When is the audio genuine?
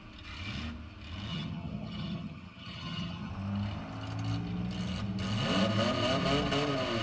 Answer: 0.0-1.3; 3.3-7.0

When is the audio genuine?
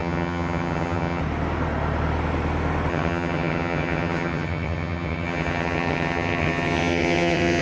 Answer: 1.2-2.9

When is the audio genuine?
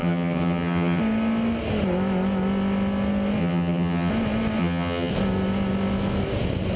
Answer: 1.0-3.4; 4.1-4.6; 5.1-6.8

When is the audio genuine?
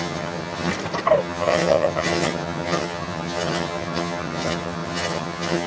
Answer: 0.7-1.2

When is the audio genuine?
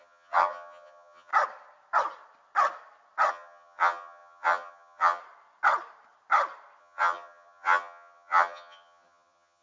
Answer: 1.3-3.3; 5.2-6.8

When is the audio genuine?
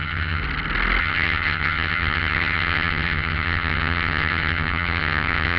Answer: 0.4-1.0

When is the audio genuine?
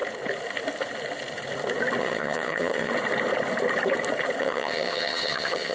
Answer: 0.0-2.0; 2.9-4.4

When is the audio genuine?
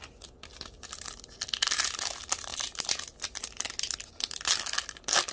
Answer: 0.0-5.3